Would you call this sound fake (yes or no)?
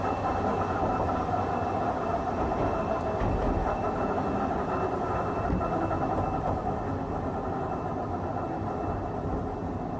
no